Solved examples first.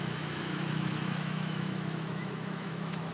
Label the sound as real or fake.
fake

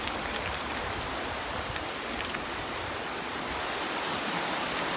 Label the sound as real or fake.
real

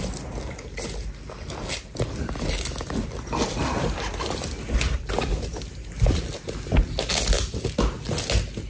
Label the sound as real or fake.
real